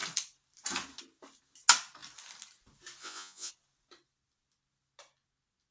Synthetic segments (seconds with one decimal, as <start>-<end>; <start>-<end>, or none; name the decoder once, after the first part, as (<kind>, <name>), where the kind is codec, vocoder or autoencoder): 3.0-3.5 (vocoder, Vocos)

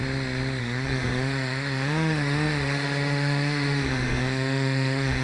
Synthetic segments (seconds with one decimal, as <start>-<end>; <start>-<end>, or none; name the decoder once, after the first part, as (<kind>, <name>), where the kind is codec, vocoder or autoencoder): 0.6-5.2 (autoencoder, DAC-VAE)

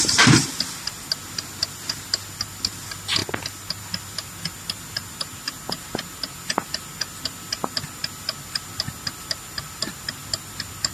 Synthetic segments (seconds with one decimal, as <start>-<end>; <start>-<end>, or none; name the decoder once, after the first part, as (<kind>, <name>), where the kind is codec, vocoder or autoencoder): none

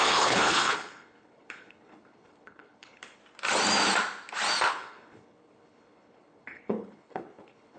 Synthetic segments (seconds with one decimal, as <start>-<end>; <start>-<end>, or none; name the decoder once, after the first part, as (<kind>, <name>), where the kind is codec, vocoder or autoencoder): 0.0-3.2 (codec, HILCodec); 4.7-7.8

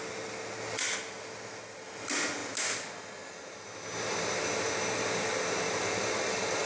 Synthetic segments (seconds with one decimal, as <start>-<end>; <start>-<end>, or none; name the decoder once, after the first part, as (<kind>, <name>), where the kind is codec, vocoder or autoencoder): none

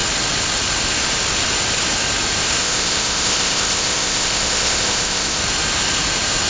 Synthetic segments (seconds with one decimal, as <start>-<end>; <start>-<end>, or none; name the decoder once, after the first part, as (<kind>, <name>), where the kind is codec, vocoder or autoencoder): 2.6-5.4 (codec, ZipCodec)

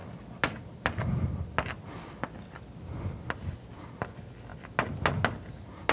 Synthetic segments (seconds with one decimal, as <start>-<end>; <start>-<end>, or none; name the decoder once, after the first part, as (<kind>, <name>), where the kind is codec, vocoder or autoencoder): none